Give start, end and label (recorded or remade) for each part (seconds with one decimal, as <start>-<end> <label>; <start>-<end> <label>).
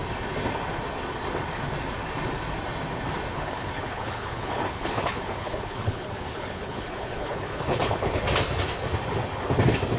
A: 0.0-3.3 recorded; 3.3-8.2 remade; 8.2-10.0 recorded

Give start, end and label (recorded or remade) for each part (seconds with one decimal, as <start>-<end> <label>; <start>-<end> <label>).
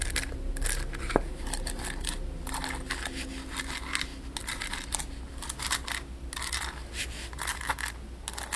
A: 0.0-8.6 recorded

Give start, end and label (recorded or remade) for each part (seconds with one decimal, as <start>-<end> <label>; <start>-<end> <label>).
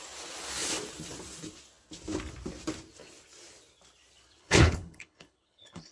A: 0.0-4.4 recorded; 4.4-5.9 remade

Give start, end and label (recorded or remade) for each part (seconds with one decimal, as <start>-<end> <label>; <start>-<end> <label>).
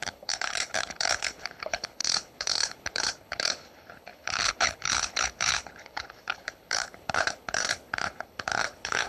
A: 0.0-9.1 remade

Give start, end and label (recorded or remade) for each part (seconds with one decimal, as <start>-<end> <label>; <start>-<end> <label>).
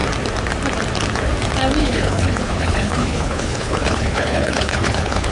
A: 0.0-1.8 recorded; 1.8-5.3 remade